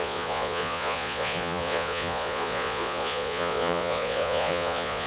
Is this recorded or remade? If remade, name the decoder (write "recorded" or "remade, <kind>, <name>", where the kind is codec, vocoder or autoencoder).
remade, vocoder, Vocos